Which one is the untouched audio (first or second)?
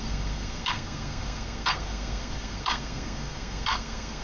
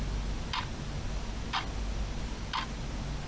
second